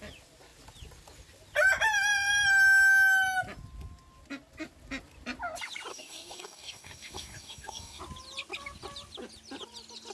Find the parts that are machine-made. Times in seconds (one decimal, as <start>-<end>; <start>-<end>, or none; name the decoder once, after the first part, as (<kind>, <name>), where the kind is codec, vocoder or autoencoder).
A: 5.9-8.0 (codec, DAC)

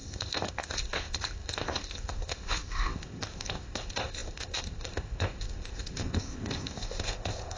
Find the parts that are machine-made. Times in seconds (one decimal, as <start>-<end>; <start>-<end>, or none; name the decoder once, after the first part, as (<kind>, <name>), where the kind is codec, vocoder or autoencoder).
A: 0.0-7.6 (codec, ZipCodec)

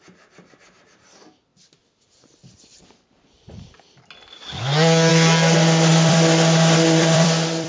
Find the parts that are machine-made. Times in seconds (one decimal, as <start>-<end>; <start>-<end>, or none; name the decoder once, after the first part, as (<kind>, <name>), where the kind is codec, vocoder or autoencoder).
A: 5.9-7.7 (vocoder, BigVGAN v2)

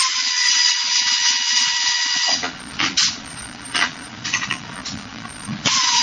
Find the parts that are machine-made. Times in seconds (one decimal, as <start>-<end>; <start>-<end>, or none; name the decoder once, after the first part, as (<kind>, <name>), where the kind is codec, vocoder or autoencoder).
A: 0.0-6.0 (vocoder, Vocos)

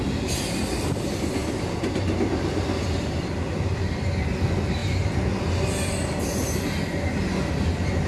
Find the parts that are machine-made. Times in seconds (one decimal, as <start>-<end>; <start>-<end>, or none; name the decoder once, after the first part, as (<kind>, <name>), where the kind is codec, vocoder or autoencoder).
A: none

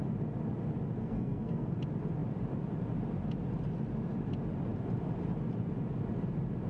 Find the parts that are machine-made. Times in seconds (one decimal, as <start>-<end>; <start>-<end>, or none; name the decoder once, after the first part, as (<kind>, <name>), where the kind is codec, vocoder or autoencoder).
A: 1.0-1.7 (codec, SNAC)

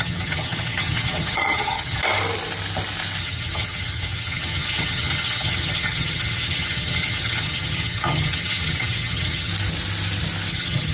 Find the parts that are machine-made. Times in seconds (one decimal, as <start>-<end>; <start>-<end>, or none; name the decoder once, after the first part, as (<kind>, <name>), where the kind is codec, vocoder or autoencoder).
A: 0.0-2.0 (vocoder, HiFi-GAN); 3.2-9.5; 10.5-10.9